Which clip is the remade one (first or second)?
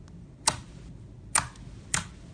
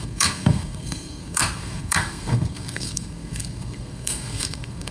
second